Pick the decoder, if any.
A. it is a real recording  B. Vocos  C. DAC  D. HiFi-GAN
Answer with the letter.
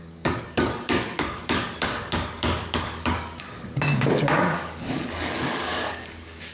C